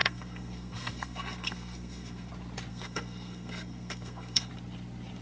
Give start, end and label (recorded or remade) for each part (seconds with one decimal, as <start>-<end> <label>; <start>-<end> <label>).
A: 0.0-2.3 remade; 2.3-2.7 recorded; 2.7-4.5 remade; 4.5-5.2 recorded